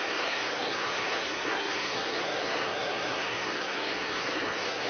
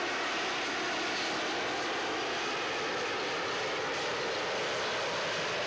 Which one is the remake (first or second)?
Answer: first